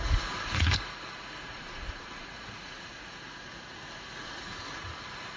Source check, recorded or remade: remade